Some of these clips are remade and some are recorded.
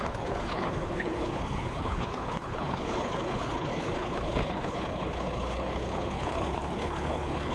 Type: remade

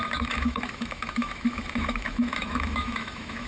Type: remade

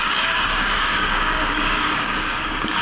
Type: remade